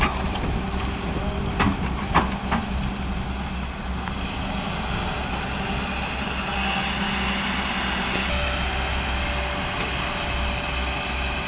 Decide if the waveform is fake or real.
real